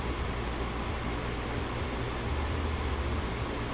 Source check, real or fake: real